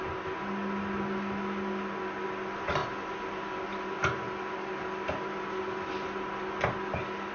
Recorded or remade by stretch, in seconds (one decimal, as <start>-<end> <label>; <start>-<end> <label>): 0.0-7.3 recorded